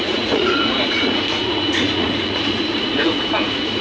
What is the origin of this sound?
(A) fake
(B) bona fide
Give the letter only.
A